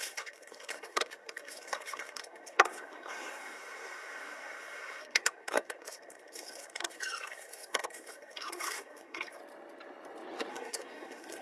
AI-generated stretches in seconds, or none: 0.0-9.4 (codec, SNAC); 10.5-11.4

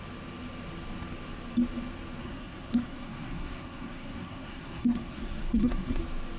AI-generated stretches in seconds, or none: 2.2-6.0 (codec, SNAC)

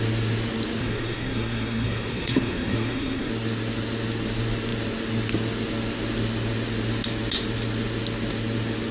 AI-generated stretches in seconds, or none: 0.8-3.3 (codec, SNAC)

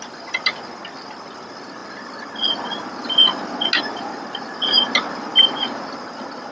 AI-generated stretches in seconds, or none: none

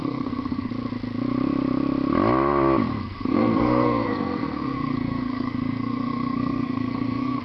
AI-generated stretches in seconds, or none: 0.0-0.7 (codec, SNAC); 2.9-7.4

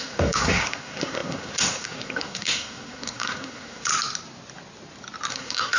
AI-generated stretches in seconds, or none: 0.0-3.9 (codec, SNAC); 5.3-5.8

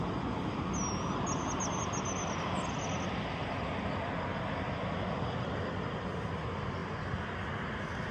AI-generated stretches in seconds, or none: none